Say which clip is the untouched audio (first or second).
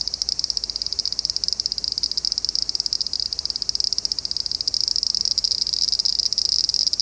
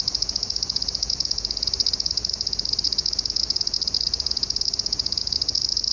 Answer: first